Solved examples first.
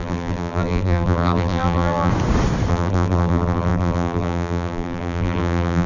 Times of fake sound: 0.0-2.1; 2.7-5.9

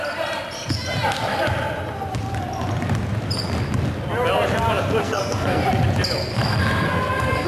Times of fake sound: 5.0-5.6; 6.3-7.5